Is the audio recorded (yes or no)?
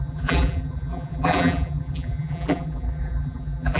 no